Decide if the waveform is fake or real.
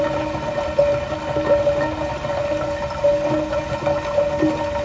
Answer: real